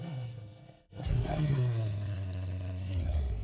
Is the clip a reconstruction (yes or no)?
yes